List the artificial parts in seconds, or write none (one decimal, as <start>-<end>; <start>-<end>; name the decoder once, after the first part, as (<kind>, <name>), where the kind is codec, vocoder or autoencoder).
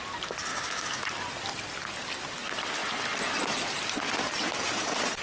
0.5-1.0 (codec, DAC)